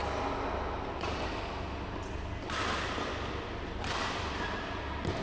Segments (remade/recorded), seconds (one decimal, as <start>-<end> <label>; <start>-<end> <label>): 0.0-5.2 recorded